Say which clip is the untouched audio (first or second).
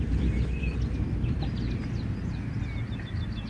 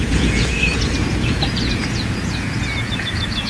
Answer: first